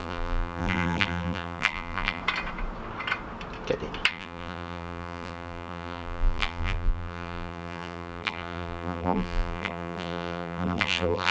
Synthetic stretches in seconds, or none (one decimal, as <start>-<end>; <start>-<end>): 0.0-2.2; 4.1-11.3